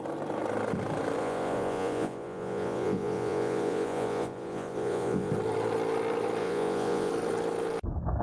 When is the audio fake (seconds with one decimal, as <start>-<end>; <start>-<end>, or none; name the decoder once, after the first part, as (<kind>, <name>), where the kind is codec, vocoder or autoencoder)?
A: 1.2-5.3 (vocoder, Vocos); 6.4-7.1